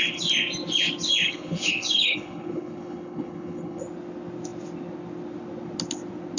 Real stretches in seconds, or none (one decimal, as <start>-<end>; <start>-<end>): 0.0-1.2; 3.8-6.4